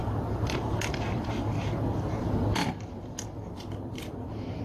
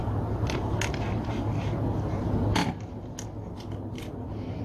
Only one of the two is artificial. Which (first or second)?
first